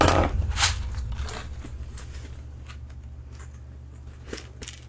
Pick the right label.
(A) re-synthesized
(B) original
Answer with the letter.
B